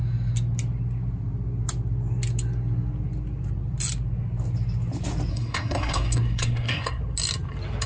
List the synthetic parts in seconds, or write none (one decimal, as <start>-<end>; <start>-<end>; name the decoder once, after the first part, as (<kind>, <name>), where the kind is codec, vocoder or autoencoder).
5.3-7.0 (codec, SNAC)